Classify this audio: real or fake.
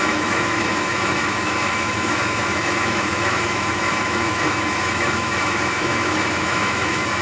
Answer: fake